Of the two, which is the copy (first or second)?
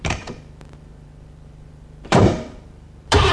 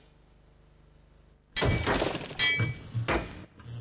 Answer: first